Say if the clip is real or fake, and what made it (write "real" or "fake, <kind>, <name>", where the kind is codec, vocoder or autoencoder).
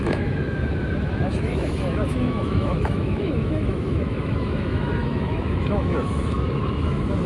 fake, autoencoder, DAC-VAE